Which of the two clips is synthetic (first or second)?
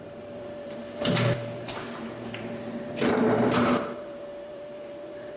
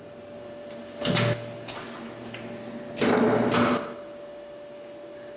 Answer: first